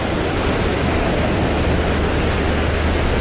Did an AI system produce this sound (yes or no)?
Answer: no